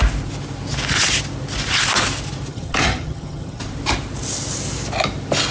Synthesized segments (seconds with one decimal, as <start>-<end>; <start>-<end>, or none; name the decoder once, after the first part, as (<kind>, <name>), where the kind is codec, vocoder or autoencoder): 2.5-3.6 (vocoder, HiFi-GAN)